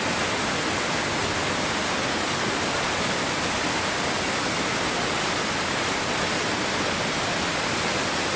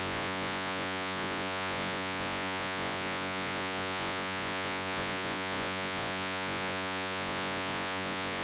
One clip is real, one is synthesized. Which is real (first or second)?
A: first